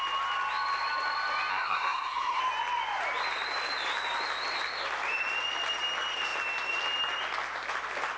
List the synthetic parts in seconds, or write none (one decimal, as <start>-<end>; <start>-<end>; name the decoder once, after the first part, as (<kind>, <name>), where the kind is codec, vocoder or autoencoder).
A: 1.5-2.4 (codec, SNAC)